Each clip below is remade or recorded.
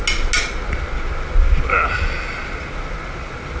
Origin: recorded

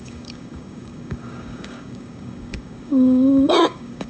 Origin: remade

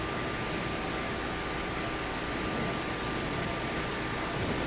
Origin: recorded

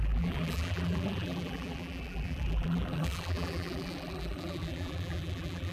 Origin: remade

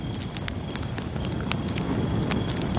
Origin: recorded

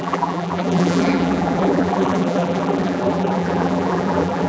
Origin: remade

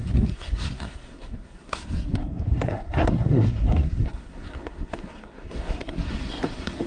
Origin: remade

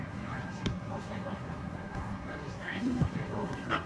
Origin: remade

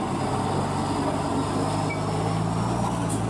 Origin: recorded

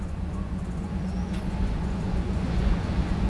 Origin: remade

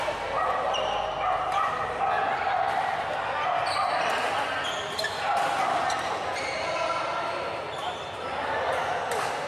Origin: recorded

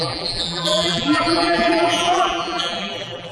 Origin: remade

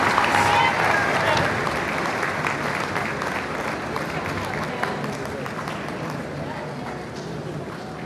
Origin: recorded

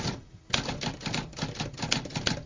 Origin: recorded